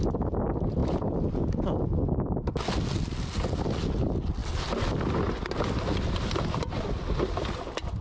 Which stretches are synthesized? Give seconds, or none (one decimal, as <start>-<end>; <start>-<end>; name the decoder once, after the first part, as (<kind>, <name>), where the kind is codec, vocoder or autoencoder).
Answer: none